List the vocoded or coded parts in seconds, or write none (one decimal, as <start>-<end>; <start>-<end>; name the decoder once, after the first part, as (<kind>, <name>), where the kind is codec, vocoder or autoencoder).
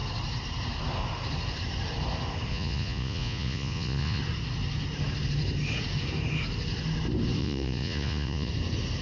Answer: 2.5-4.2 (vocoder, Vocos); 7.4-8.5